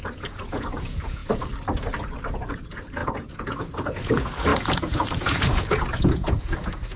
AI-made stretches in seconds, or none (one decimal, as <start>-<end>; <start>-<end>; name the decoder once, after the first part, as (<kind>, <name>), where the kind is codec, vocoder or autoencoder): 0.0-1.2 (vocoder, Vocos); 2.5-7.0